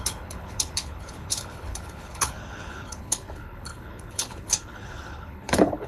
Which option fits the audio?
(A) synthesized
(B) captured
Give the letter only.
A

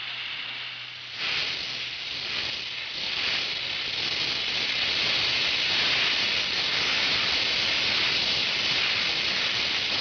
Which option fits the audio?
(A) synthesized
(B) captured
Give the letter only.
B